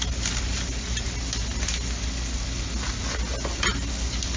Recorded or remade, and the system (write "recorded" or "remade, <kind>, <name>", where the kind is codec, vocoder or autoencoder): recorded